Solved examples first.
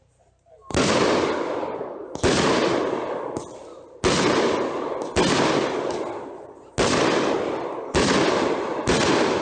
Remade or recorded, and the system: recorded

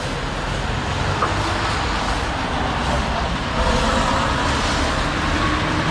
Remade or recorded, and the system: recorded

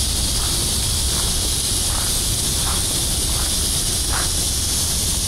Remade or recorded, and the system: recorded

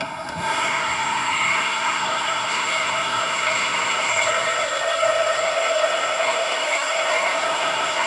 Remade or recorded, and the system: remade, codec, SNAC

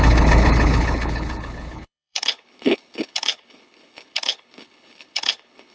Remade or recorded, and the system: remade, codec, HILCodec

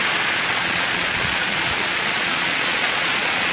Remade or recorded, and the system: remade, vocoder, Vocos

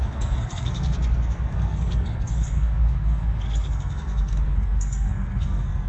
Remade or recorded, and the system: remade, codec, SNAC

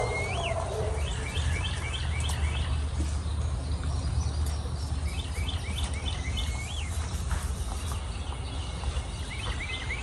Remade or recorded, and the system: recorded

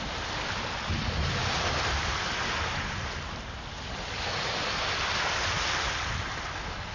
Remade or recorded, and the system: recorded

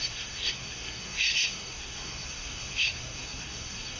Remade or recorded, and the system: remade, codec, SNAC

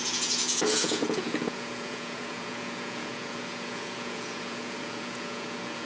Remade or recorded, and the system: remade, vocoder, Vocos